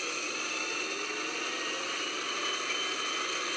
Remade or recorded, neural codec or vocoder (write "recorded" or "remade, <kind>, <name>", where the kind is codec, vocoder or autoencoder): remade, vocoder, BigVGAN v2